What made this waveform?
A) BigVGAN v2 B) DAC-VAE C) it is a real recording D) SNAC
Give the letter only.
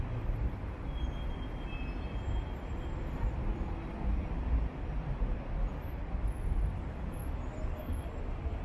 A